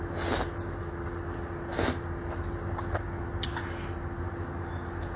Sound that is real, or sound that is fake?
real